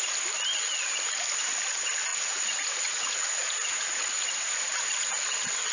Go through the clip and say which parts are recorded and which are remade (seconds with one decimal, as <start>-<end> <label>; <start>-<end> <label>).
0.0-2.1 recorded; 2.1-5.1 remade; 5.1-5.7 recorded